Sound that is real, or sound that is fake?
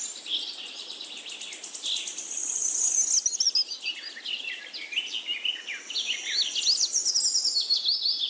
real